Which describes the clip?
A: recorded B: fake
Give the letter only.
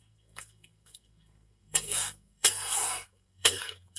B